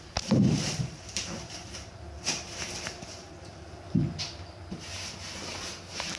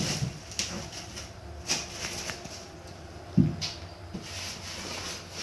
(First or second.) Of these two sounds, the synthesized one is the first